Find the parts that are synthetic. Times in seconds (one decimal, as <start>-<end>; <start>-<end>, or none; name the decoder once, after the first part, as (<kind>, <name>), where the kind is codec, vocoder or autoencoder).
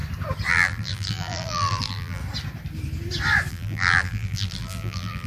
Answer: 0.5-2.2 (vocoder, BigVGAN v2); 3.5-5.3